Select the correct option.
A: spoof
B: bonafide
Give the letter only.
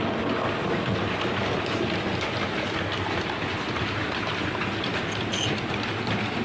B